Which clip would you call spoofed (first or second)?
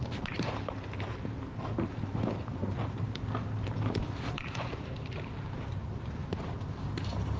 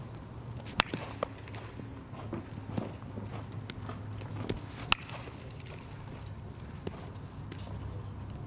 first